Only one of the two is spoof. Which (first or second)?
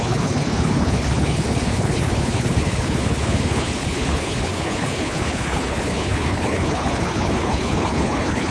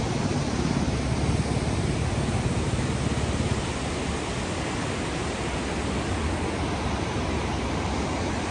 first